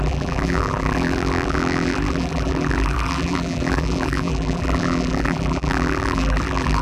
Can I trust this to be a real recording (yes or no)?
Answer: no